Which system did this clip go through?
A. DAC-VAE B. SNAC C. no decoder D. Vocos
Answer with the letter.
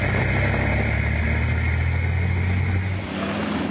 C